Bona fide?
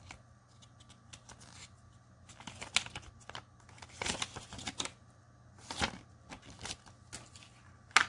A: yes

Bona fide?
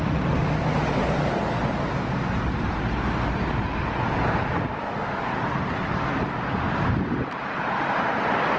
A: yes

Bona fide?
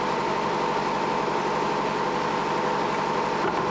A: yes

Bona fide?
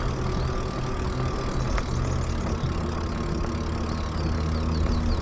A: yes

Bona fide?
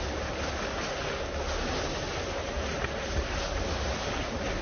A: yes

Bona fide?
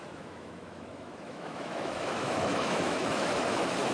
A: no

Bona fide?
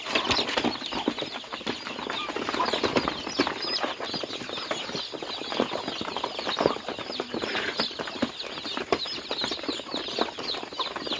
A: yes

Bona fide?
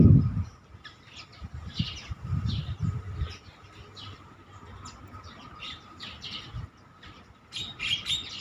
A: yes